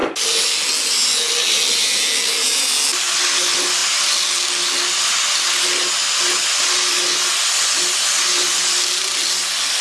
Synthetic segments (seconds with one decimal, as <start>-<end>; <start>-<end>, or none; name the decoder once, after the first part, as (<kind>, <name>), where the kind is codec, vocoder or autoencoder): none

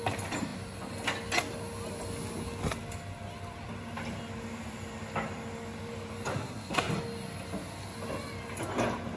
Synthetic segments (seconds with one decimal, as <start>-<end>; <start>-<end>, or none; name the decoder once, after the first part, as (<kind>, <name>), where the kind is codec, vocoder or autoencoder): 6.3-6.9 (codec, SNAC)

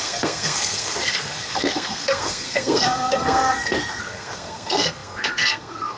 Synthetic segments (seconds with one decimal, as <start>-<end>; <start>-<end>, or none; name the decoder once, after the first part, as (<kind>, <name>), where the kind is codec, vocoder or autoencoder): 0.0-6.0 (codec, SNAC)

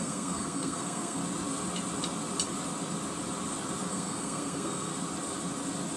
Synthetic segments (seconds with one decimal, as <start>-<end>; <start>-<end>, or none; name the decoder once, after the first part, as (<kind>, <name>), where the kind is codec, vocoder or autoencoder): 0.0-1.2 (codec, SNAC); 3.9-4.9

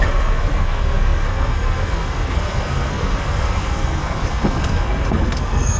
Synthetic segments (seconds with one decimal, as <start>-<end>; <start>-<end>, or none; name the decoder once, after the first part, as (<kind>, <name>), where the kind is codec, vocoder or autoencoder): 0.0-5.8 (codec, SNAC)

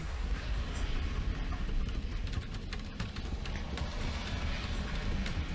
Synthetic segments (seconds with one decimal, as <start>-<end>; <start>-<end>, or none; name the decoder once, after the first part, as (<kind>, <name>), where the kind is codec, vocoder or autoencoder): 0.0-0.6 (codec, SNAC)